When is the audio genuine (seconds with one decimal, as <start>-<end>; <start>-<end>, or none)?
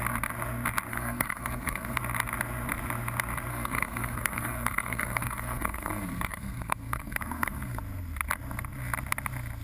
0.0-0.9; 2.0-3.5; 7.8-9.6